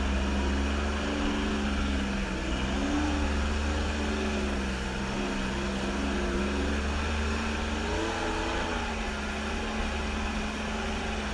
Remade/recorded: recorded